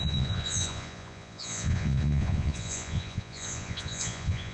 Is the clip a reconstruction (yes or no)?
yes